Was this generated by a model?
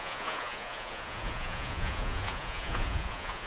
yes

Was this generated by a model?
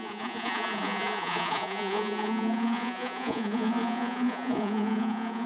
yes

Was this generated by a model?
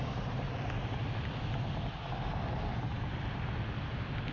no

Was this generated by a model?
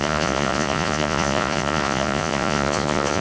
yes